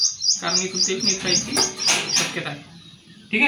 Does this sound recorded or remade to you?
recorded